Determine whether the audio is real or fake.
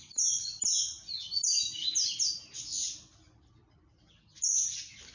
real